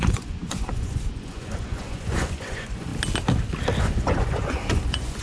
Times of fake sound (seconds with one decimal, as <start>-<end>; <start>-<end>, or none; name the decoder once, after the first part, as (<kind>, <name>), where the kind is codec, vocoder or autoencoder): 0.0-2.9 (vocoder, Vocos); 3.8-5.2